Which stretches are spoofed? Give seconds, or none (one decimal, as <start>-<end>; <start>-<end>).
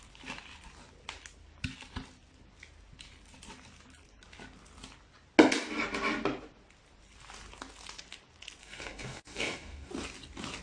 8.6-9.9